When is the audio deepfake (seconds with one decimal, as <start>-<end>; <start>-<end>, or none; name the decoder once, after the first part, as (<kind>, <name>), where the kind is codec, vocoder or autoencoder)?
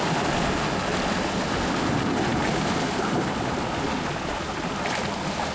none